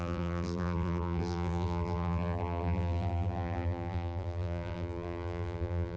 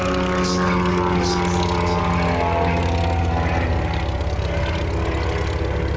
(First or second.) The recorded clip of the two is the second